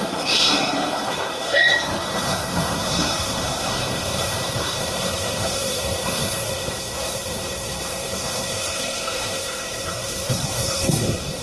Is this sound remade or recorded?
remade